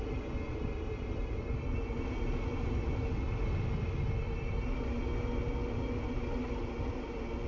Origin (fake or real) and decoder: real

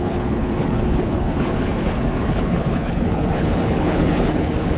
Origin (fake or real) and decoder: fake, codec, HILCodec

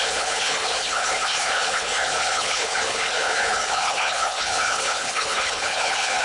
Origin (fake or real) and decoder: fake, codec, HILCodec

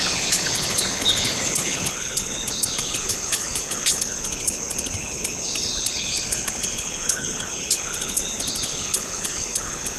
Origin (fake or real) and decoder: fake, codec, HILCodec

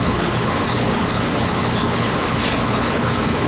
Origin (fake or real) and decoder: fake, codec, HILCodec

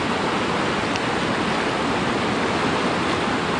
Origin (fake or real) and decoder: real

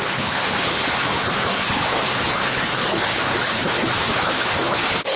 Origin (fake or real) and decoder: fake, codec, HILCodec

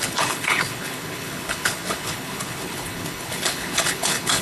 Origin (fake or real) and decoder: fake, codec, HILCodec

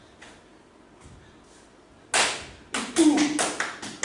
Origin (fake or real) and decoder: real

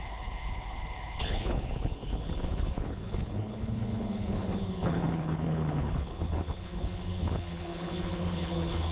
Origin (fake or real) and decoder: fake, codec, HILCodec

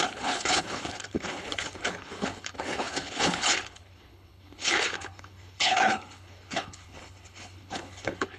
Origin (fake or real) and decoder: fake, codec, HILCodec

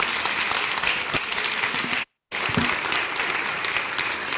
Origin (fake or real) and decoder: real